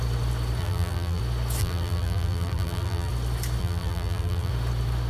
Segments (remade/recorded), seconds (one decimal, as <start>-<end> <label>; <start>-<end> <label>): 0.0-0.6 recorded; 0.6-1.2 remade; 1.2-1.6 recorded; 1.6-3.1 remade; 3.1-3.6 recorded; 3.6-4.5 remade; 4.5-5.1 recorded

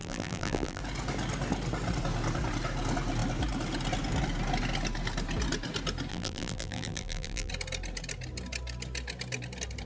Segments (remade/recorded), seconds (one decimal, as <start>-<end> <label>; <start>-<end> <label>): 0.0-0.8 remade; 0.8-6.1 recorded; 6.1-7.5 remade; 7.5-9.9 recorded

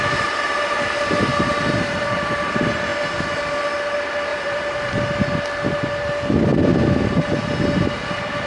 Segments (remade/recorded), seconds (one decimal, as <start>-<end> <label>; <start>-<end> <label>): 0.0-4.3 recorded; 4.3-5.0 remade; 5.0-8.5 recorded

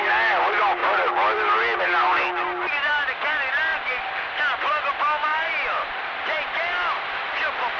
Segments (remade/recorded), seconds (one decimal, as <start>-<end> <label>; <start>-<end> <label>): 0.0-3.7 recorded; 3.7-4.4 remade; 4.4-5.3 recorded; 5.3-7.3 remade; 7.3-7.8 recorded

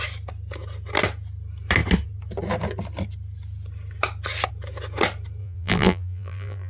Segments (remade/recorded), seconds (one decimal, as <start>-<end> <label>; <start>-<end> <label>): 0.0-5.4 recorded; 5.4-6.7 remade